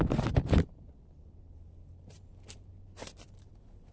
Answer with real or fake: real